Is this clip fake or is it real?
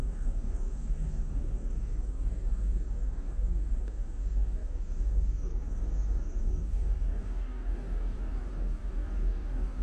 fake